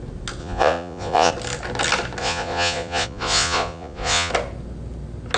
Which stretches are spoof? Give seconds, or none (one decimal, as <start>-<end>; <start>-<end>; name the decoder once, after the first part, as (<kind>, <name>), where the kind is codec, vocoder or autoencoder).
0.4-1.3 (vocoder, Vocos); 2.2-4.3